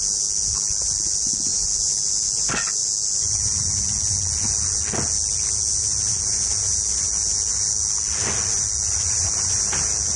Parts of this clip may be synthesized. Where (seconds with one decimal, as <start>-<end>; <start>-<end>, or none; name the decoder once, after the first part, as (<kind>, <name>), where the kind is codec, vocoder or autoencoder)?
none